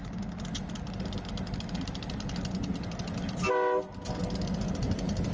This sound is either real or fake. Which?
real